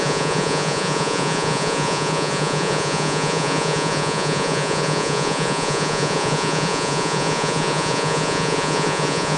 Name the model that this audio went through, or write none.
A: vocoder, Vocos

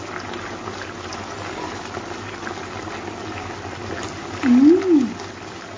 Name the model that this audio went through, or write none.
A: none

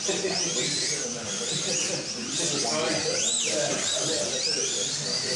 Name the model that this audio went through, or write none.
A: none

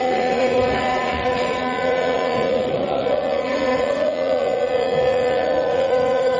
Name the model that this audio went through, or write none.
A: vocoder, Vocos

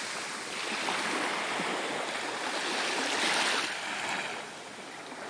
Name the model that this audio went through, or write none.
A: none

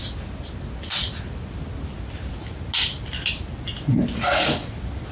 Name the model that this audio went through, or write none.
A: none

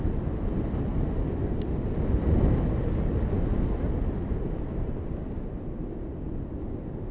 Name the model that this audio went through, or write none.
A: none